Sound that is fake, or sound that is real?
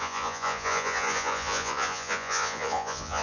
fake